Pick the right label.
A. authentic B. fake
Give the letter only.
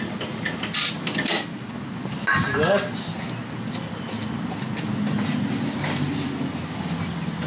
A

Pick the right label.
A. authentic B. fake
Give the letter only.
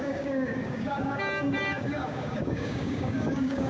B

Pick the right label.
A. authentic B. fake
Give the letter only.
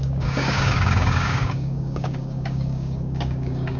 B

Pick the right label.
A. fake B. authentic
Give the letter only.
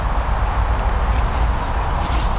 B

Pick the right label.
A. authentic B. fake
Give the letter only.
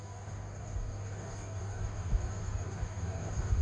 B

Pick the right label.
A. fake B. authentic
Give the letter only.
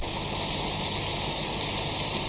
B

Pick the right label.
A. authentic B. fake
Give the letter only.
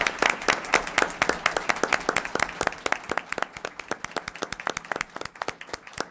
A